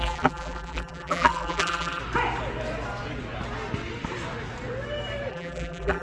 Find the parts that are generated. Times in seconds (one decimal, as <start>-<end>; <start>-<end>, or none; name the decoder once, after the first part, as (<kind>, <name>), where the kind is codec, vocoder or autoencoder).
0.0-2.0 (vocoder, BigVGAN v2); 5.3-6.0